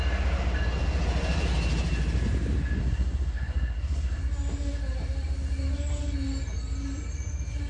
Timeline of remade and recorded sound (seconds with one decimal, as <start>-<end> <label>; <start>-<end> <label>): 0.0-2.8 recorded; 2.8-4.2 remade; 4.2-7.7 recorded